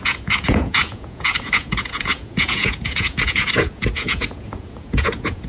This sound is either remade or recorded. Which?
remade